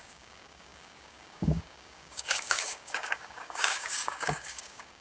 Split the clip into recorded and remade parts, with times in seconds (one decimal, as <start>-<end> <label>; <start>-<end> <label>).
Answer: 0.0-5.0 remade